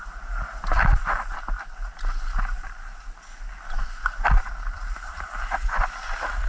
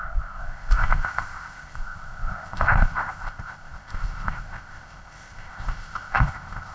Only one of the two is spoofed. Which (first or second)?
second